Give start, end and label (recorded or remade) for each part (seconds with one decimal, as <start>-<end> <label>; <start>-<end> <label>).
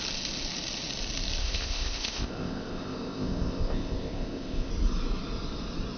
0.0-1.4 recorded; 1.4-4.7 remade; 4.7-6.0 recorded